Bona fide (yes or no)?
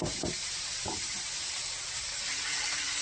yes